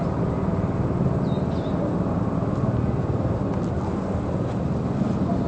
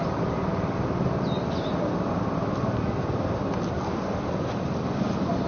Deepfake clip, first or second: second